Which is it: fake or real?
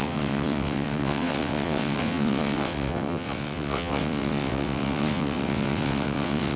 fake